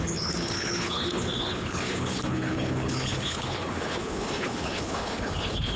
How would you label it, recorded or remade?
remade